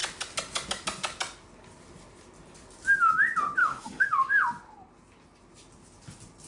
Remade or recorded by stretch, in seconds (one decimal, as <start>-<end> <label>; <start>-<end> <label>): 0.0-3.6 recorded; 3.6-4.1 remade; 4.1-6.5 recorded